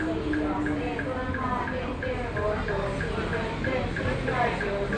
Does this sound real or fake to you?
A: real